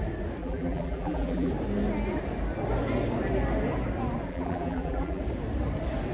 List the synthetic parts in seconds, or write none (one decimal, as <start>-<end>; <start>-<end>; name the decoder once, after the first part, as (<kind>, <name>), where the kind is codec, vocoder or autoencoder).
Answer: 0.4-1.5 (vocoder, BigVGAN v2); 4.3-5.2